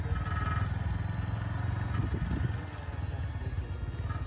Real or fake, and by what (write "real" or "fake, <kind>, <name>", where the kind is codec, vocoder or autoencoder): real